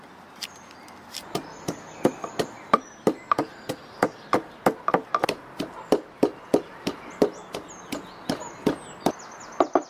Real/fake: real